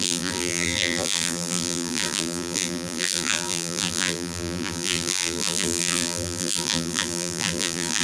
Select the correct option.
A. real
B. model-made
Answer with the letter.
B